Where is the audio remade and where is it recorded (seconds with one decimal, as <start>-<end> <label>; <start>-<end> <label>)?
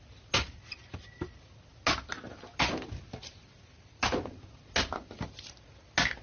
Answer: 0.0-6.2 recorded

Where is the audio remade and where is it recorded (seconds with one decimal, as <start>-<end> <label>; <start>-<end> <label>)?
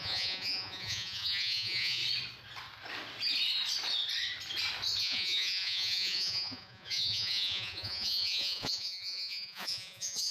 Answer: 0.0-2.0 remade; 2.0-5.0 recorded; 5.0-10.3 remade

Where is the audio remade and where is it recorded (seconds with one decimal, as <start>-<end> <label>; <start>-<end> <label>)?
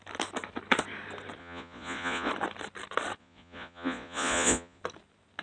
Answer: 0.0-1.4 recorded; 1.4-2.3 remade; 2.3-3.2 recorded; 3.2-4.8 remade; 4.8-5.4 recorded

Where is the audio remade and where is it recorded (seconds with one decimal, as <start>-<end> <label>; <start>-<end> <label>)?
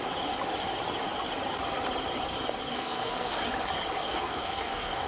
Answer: 0.0-2.7 recorded; 2.7-3.4 remade; 3.4-4.0 recorded; 4.0-5.1 remade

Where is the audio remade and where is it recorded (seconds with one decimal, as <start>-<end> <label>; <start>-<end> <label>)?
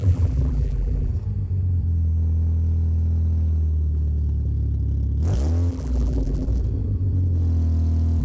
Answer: 0.0-1.1 remade; 1.1-5.7 recorded; 5.7-6.5 remade; 6.5-8.2 recorded